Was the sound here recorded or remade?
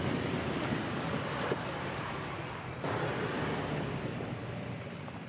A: remade